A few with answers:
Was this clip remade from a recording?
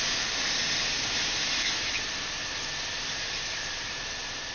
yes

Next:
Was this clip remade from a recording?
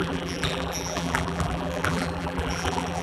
yes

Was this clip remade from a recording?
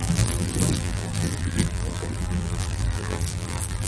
yes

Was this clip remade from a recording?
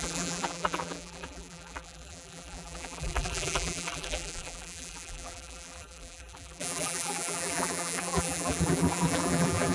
yes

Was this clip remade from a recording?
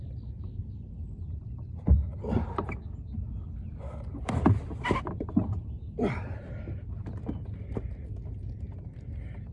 yes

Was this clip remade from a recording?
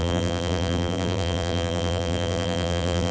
yes